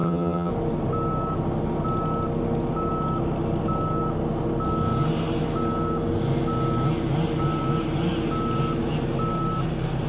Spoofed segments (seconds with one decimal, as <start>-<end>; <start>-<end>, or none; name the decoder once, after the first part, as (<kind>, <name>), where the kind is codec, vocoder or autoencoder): 0.0-0.5 (vocoder, HiFi-GAN)